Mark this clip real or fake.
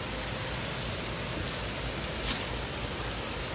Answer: real